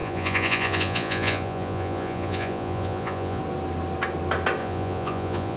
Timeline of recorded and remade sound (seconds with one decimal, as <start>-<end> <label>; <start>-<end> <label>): 0.0-3.4 remade; 3.4-4.6 recorded; 4.6-5.6 remade